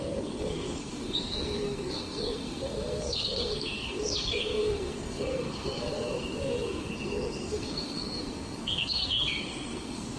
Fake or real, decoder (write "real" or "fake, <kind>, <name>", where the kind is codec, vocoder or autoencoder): fake, codec, SNAC